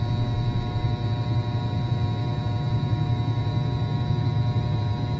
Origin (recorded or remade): recorded